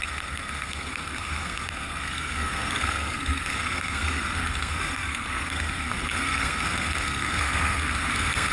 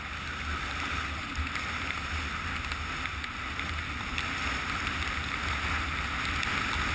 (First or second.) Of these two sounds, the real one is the second